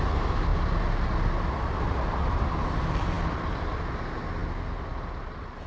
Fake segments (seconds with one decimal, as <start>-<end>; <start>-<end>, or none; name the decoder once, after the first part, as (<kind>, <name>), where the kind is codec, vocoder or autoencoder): none